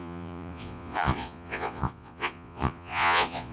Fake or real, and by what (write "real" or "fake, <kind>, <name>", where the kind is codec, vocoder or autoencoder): fake, vocoder, Vocos